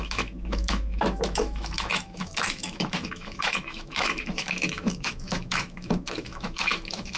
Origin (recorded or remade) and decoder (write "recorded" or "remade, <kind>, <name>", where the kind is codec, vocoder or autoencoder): remade, autoencoder, DAC-VAE